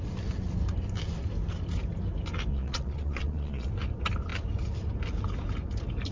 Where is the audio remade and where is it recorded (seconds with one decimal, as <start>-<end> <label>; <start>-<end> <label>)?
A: 0.0-2.5 recorded; 2.5-3.7 remade; 3.7-6.1 recorded